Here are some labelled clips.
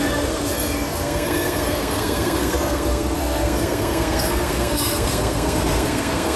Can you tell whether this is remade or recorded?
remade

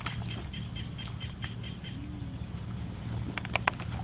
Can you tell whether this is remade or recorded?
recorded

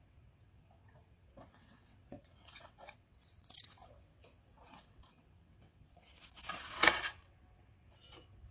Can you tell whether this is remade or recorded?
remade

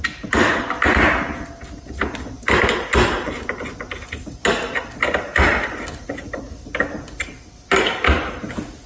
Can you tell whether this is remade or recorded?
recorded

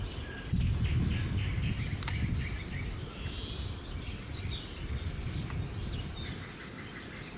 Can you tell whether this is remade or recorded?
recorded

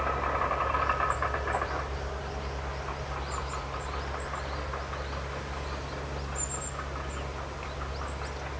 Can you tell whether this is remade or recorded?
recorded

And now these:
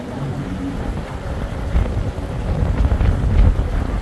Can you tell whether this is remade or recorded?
recorded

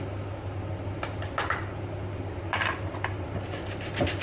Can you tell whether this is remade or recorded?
recorded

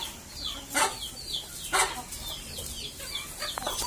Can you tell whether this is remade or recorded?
recorded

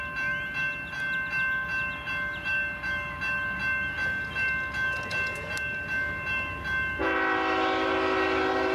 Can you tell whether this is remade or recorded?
recorded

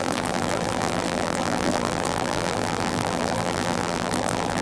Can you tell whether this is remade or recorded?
remade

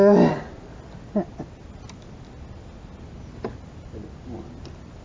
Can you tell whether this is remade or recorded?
recorded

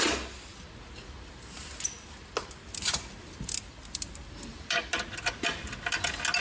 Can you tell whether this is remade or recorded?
recorded